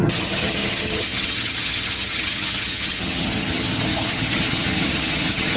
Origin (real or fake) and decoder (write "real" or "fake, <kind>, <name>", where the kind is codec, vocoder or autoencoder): fake, vocoder, HiFi-GAN